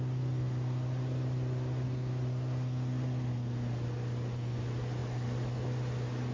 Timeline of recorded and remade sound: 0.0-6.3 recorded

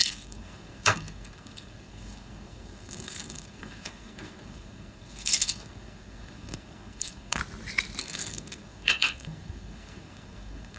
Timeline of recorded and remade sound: 0.0-7.4 remade; 7.4-8.0 recorded; 8.0-10.8 remade

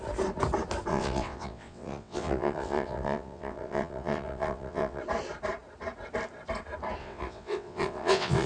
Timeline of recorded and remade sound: 0.0-0.9 recorded; 0.9-5.0 remade; 5.0-7.0 recorded; 7.0-8.5 remade

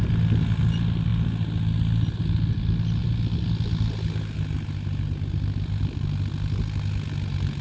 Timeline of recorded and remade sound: 0.0-7.6 recorded

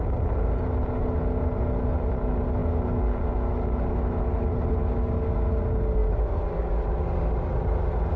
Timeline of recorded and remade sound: 0.0-8.2 recorded

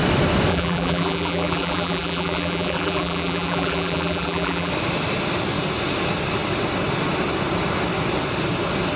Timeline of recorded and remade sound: 0.0-0.5 recorded; 0.5-4.7 remade; 4.7-9.0 recorded

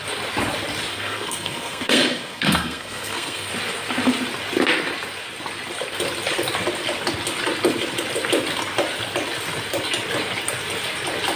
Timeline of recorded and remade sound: 0.0-0.9 recorded; 0.9-3.5 remade; 3.5-11.4 recorded